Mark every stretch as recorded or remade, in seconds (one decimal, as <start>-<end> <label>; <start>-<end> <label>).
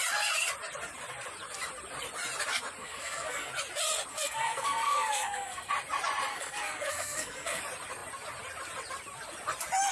0.0-2.8 recorded; 2.8-3.5 remade; 3.5-4.1 recorded; 4.1-5.7 remade; 5.7-6.3 recorded; 6.3-7.6 remade; 7.6-9.9 recorded